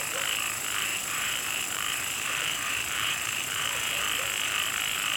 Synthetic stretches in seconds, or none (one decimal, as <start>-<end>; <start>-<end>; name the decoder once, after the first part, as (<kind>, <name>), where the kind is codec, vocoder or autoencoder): 0.9-4.0 (vocoder, BigVGAN v2)